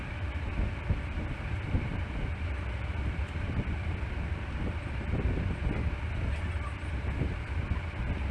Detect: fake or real real